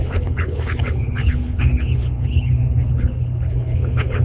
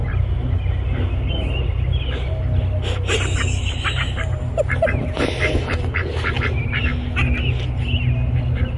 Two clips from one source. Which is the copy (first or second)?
first